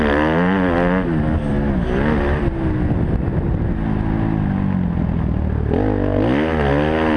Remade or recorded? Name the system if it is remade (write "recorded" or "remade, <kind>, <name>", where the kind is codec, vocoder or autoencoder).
recorded